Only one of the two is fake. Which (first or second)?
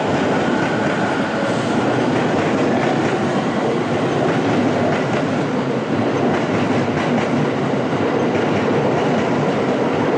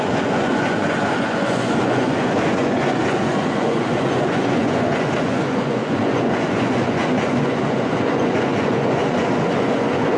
second